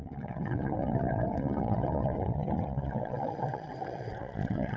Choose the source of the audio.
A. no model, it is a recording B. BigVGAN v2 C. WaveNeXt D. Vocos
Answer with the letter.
C